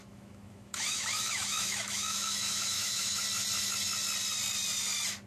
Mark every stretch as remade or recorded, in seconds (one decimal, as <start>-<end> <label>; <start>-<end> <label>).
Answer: 0.0-3.2 remade; 3.2-5.3 recorded